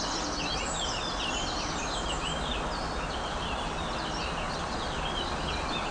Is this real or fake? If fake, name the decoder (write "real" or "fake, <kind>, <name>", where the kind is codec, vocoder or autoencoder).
fake, vocoder, BigVGAN v2